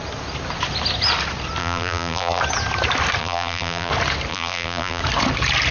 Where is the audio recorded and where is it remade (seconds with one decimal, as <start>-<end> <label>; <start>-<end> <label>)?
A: 0.0-1.6 recorded; 1.6-2.4 remade; 2.4-3.2 recorded; 3.2-3.9 remade; 3.9-4.3 recorded; 4.3-5.0 remade; 5.0-5.7 recorded